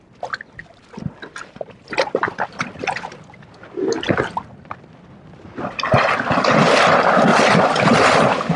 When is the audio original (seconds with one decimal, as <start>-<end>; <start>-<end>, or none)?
0.0-7.3